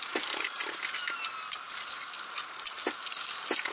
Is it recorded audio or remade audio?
recorded